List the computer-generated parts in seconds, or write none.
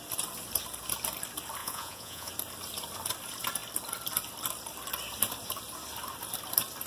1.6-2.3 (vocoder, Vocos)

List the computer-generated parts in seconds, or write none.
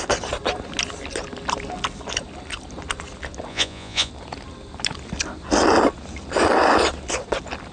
3.5-4.1 (vocoder, Vocos)